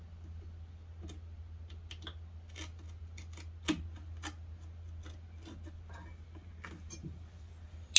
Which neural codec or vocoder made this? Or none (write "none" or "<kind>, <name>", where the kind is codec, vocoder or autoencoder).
none